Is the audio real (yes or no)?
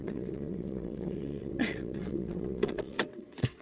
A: no